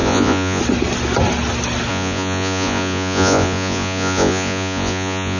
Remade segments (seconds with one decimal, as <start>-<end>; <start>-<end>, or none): 0.0-0.6; 1.9-5.4